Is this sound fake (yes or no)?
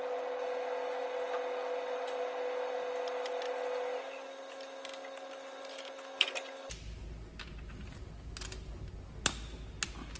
no